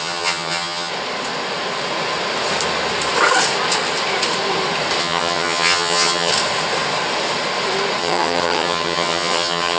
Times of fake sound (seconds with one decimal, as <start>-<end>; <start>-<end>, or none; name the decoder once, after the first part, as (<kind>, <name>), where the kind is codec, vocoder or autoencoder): 0.0-0.9 (vocoder, HiFi-GAN); 5.0-6.3; 8.0-9.8